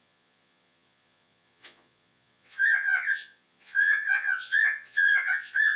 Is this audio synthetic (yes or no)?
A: yes